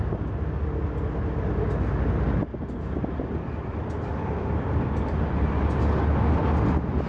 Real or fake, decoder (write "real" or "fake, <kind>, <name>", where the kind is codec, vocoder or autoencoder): real